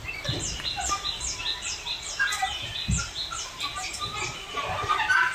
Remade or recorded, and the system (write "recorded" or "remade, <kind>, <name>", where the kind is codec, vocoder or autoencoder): recorded